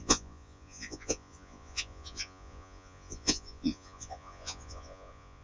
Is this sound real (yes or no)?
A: no